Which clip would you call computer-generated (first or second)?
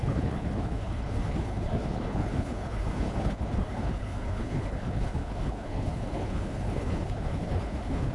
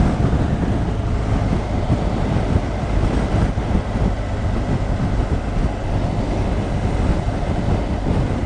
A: first